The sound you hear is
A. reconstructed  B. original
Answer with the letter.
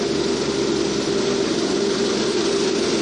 B